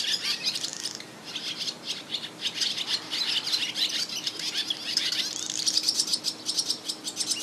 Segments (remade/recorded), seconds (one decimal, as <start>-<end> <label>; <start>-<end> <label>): 0.0-7.4 recorded